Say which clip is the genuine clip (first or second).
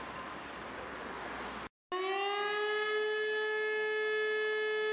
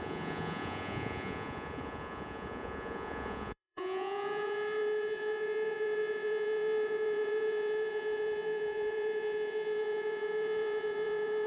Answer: first